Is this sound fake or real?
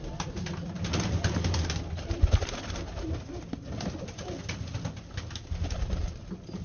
real